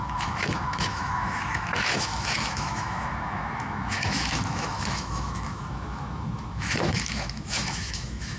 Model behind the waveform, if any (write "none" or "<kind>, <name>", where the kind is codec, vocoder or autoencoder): autoencoder, DAC-VAE